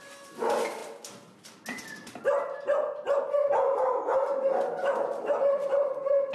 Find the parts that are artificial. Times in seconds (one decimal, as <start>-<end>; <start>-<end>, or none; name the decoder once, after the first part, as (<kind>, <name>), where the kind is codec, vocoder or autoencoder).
0.0-0.8 (vocoder, BigVGAN v2); 4.6-6.3